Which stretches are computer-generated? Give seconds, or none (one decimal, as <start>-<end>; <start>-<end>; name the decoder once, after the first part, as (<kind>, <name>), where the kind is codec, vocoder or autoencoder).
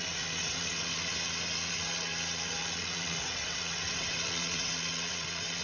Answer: 0.0-1.1 (vocoder, WaveNeXt); 1.7-2.1; 2.6-5.6